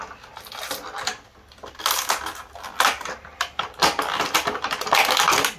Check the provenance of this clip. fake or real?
real